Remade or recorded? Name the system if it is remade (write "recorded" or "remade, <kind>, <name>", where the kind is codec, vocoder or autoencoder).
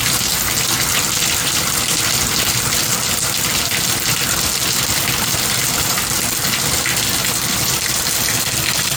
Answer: recorded